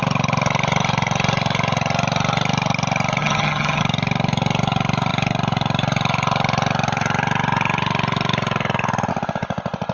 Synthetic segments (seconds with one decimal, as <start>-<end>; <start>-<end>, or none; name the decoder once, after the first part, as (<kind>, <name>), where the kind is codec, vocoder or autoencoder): 3.2-3.8 (vocoder, HiFi-GAN)